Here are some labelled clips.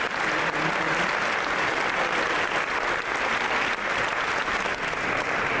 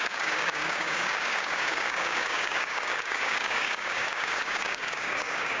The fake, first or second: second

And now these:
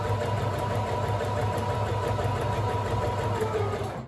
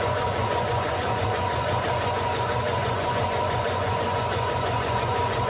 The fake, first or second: second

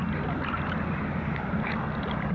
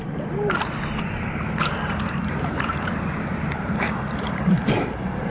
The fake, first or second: second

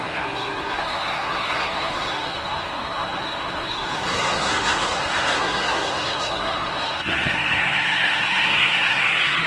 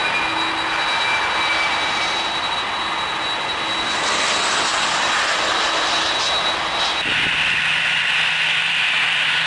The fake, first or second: first